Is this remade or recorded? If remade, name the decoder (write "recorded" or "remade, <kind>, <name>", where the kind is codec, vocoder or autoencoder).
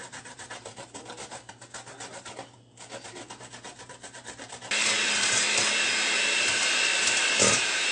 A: recorded